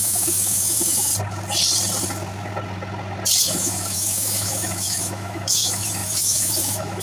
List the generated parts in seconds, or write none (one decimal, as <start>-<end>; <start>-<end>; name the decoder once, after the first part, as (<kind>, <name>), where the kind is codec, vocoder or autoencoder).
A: 0.0-1.1 (autoencoder, DAC-VAE); 3.4-7.0